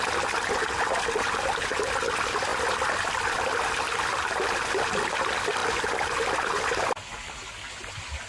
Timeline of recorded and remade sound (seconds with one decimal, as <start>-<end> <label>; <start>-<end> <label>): 0.0-2.5 recorded; 2.5-4.7 remade; 4.7-8.3 recorded